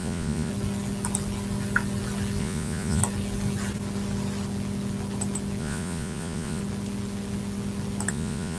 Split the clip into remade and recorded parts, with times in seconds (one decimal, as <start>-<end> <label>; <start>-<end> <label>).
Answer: 0.0-0.5 remade; 0.5-2.4 recorded; 2.4-3.0 remade; 3.0-5.6 recorded; 5.6-6.6 remade; 6.6-8.1 recorded; 8.1-8.6 remade